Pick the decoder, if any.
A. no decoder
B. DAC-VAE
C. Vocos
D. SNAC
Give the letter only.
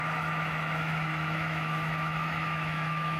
B